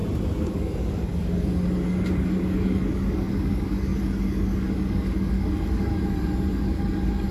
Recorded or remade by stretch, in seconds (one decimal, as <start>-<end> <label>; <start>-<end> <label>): 0.0-0.5 recorded; 0.5-7.3 remade